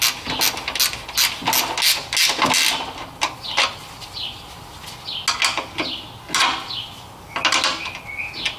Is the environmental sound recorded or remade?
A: recorded